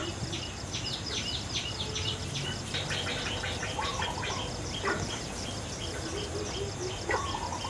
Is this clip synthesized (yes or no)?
no